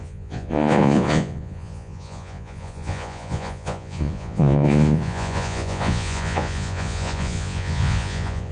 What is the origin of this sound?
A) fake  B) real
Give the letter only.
A